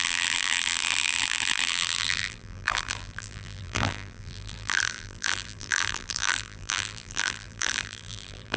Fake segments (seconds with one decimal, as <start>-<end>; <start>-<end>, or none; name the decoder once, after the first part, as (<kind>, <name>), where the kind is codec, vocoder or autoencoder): 0.0-8.6 (vocoder, BigVGAN v2)